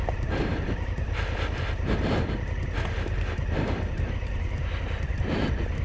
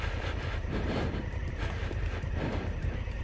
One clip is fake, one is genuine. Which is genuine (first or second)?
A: first